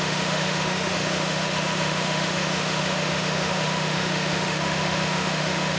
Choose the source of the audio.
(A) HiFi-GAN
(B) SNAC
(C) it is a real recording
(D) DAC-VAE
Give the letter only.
D